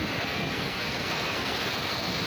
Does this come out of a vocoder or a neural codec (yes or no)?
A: yes